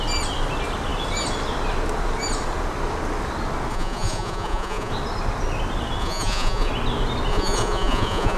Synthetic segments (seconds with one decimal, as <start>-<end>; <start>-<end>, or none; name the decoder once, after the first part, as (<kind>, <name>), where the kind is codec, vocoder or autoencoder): 3.7-4.9 (vocoder, Vocos); 6.0-6.7; 7.3-8.4